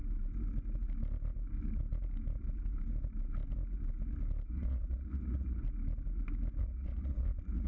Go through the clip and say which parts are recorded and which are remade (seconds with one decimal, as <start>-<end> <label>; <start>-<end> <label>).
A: 0.0-4.5 recorded; 4.5-5.6 remade; 5.6-6.6 recorded; 6.6-7.7 remade